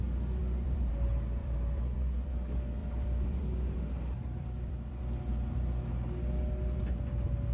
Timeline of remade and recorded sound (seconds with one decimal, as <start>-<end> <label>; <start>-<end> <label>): 0.0-0.4 recorded; 0.4-0.9 remade; 0.9-1.4 recorded; 1.4-2.3 remade; 2.3-2.8 recorded; 2.8-5.0 remade; 5.0-7.5 recorded